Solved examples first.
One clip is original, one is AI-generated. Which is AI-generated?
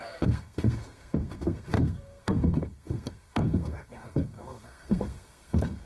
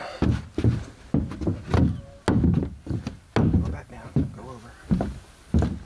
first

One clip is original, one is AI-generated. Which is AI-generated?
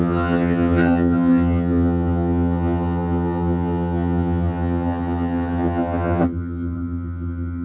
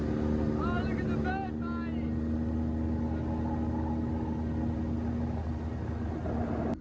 first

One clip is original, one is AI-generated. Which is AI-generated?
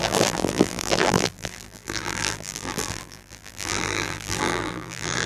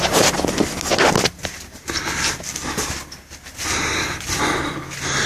first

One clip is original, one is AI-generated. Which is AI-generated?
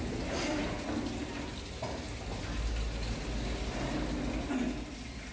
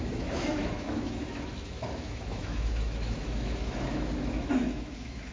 second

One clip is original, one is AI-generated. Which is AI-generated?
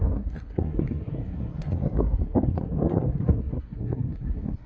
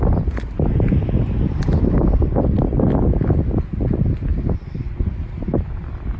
first